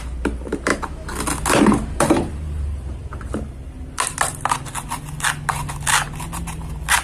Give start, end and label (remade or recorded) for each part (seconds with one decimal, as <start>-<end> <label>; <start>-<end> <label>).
0.0-0.7 remade; 0.7-1.6 recorded; 1.6-3.1 remade; 3.1-6.4 recorded; 6.4-7.0 remade